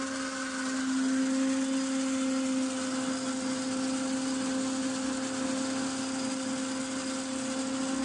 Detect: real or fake real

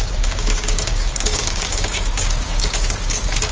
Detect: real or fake fake